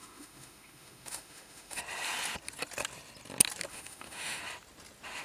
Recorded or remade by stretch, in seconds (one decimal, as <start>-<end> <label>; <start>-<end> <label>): 0.0-1.8 remade; 1.8-3.7 recorded; 3.7-4.4 remade; 4.4-5.2 recorded